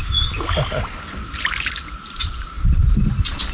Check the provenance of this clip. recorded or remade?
recorded